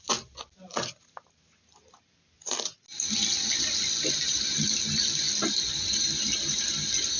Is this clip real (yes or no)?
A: yes